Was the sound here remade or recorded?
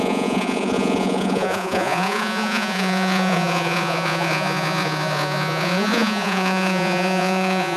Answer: remade